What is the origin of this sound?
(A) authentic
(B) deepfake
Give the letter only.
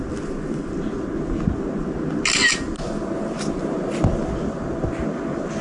A